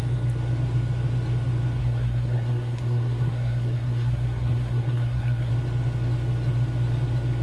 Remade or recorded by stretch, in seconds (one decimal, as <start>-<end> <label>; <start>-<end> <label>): 0.0-1.8 recorded; 1.8-5.5 remade; 5.5-7.4 recorded